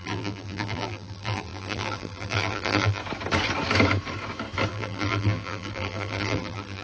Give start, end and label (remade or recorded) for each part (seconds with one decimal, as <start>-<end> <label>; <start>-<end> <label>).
0.0-3.0 remade; 3.0-4.7 recorded; 4.7-6.8 remade